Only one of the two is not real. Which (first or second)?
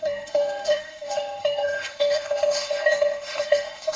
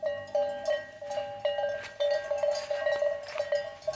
first